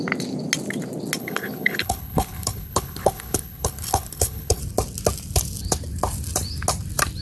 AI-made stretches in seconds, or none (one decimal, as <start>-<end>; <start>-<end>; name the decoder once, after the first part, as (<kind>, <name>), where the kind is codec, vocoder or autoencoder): 1.2-4.6 (codec, HILCodec)